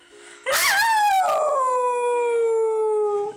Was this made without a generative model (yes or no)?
yes